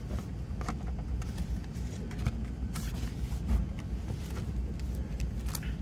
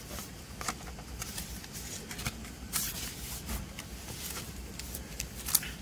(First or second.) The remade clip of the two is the second